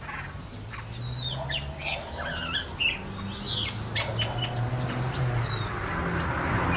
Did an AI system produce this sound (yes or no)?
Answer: no